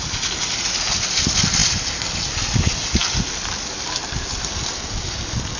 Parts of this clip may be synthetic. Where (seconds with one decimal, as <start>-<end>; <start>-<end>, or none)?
none

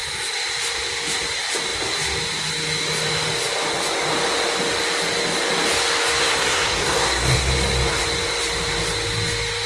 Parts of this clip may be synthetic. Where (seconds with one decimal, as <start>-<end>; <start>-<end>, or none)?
6.2-7.5

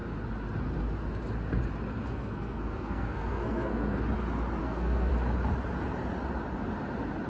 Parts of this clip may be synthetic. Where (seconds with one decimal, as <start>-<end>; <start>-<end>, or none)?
1.9-4.0; 4.6-5.1